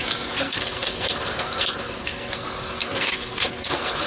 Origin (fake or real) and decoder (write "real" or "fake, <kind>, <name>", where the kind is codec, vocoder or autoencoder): fake, codec, SNAC